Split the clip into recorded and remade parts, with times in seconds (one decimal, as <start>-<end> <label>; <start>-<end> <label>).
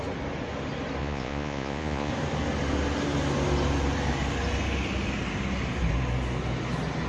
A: 0.0-1.0 recorded; 1.0-2.1 remade; 2.1-7.1 recorded